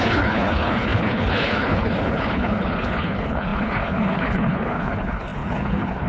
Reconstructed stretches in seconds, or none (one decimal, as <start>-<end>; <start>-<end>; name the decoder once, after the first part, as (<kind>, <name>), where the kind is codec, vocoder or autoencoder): 0.0-6.1 (codec, HILCodec)